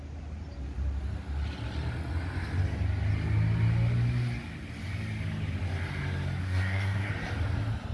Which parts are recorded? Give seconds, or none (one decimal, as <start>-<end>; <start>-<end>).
0.0-6.4; 7.1-7.9